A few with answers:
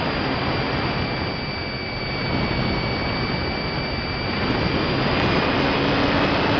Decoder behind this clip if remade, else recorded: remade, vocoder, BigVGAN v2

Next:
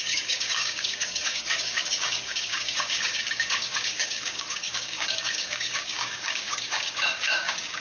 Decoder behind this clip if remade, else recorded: remade, codec, DAC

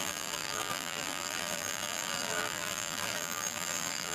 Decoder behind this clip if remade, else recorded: remade, vocoder, BigVGAN v2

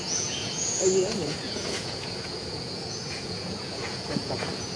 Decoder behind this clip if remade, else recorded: remade, vocoder, Vocos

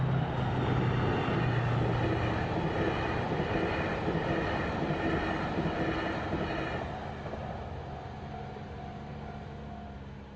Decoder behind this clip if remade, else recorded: recorded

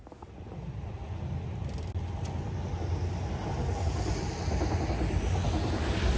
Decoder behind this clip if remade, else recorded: recorded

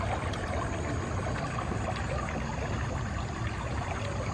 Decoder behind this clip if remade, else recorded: recorded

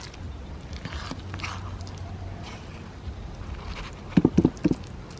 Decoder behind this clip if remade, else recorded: recorded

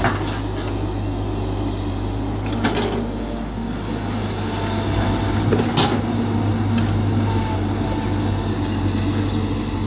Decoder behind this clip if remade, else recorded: recorded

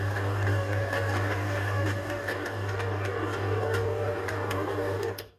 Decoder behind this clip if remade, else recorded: remade, codec, DAC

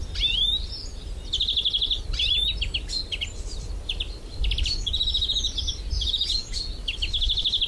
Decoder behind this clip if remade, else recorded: recorded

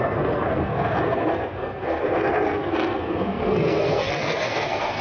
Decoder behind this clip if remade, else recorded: remade, codec, SNAC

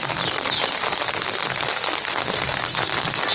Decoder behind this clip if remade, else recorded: recorded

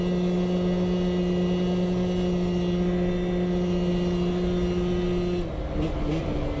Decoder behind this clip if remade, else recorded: recorded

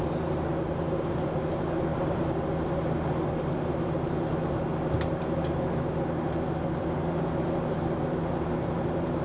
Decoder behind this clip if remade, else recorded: remade, vocoder, BigVGAN v2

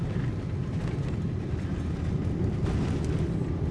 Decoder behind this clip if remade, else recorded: recorded